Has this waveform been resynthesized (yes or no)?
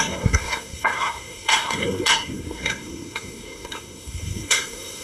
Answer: yes